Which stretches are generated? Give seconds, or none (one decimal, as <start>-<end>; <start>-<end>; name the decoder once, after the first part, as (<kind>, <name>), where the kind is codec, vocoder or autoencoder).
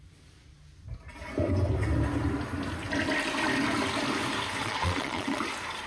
4.6-5.4 (vocoder, Vocos)